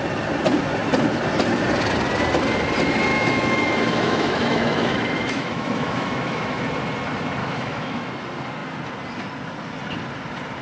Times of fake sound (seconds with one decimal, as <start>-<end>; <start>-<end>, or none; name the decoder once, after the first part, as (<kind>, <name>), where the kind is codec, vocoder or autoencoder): 3.1-6.6 (autoencoder, DAC-VAE); 7.4-8.1